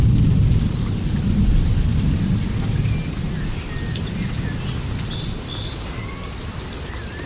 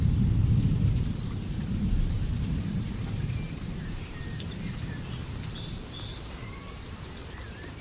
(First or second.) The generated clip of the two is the second